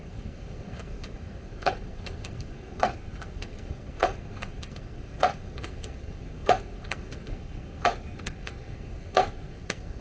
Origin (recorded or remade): remade